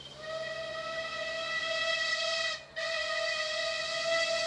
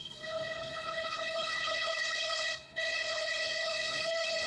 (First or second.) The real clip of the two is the first